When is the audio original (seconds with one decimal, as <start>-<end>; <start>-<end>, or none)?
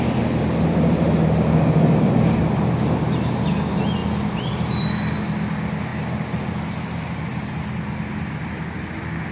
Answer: 0.0-4.0; 5.2-5.9; 8.6-9.3